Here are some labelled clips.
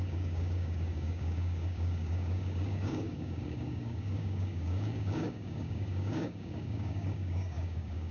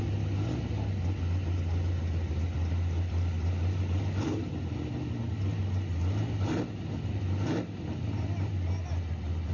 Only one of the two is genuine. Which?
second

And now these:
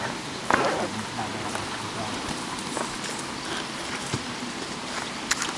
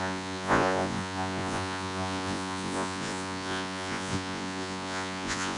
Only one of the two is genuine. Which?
first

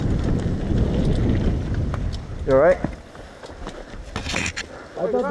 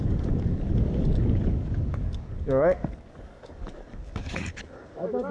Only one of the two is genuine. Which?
first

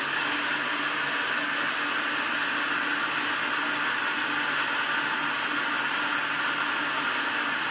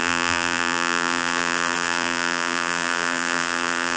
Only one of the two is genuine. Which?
first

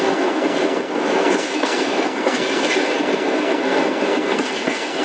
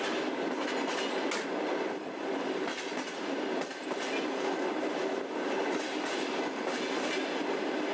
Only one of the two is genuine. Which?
second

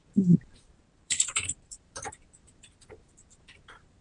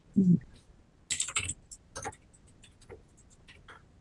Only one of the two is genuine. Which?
second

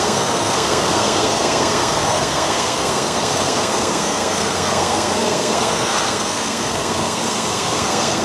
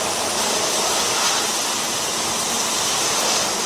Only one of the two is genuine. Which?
second